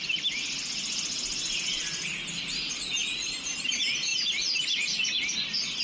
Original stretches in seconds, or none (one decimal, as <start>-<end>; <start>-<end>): 0.0-5.8